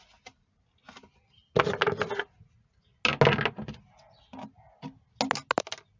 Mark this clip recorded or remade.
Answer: recorded